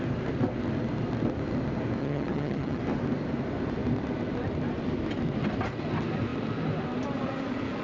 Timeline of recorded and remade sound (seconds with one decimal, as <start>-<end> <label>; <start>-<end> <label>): 0.0-2.0 recorded; 2.0-2.8 remade; 2.8-7.8 recorded